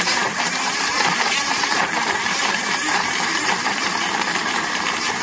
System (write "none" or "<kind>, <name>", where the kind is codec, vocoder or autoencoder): vocoder, BigVGAN v2